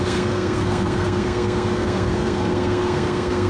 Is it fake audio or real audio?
fake